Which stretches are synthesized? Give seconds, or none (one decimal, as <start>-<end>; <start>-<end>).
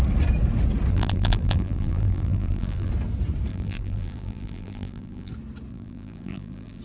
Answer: 0.9-2.9; 3.5-5.3; 5.7-6.8